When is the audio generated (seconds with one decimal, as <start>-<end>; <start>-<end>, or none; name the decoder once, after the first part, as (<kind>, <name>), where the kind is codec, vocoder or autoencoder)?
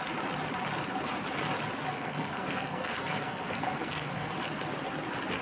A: 1.9-4.3 (codec, SNAC)